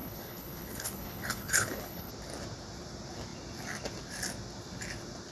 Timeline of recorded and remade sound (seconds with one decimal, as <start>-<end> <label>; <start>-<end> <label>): 0.0-2.1 remade; 2.1-5.3 recorded